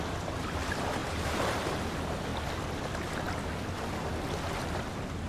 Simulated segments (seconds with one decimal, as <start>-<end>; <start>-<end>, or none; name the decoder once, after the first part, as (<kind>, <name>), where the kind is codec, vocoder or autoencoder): 1.0-1.7 (vocoder, BigVGAN v2)